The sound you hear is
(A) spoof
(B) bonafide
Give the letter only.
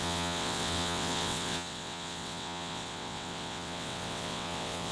A